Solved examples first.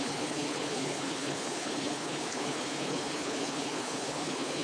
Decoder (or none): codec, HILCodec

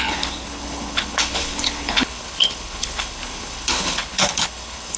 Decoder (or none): codec, HILCodec